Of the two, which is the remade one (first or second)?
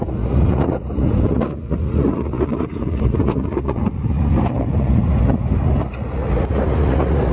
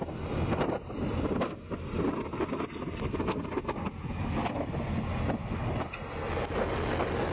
first